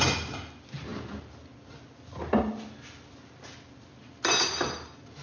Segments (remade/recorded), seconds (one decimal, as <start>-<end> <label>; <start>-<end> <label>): 0.0-5.2 recorded